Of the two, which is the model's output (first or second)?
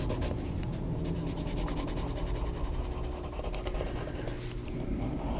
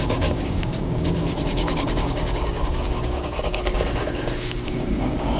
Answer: second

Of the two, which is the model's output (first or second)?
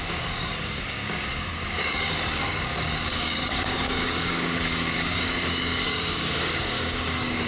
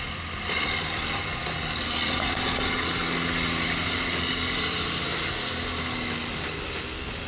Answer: first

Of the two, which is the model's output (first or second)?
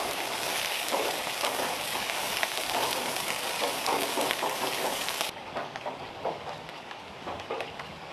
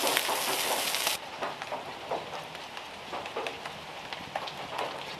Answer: first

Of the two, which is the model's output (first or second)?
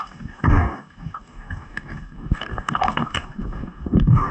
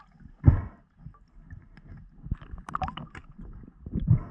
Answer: first